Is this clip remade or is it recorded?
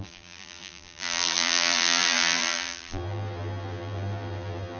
remade